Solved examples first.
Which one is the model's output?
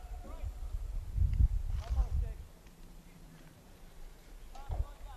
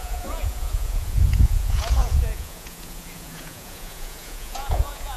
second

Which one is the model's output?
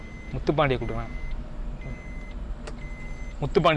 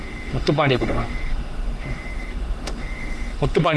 second